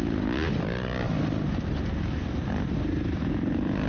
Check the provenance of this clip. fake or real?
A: real